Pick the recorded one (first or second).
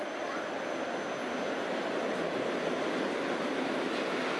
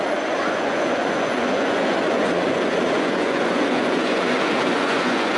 first